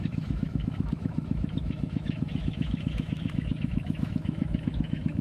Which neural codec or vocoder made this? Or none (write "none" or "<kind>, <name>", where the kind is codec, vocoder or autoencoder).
autoencoder, DAC-VAE